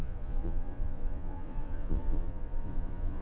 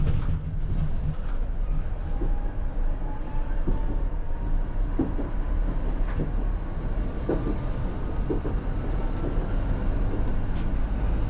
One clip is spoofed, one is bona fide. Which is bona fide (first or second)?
second